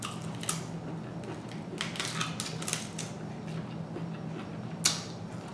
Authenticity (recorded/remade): recorded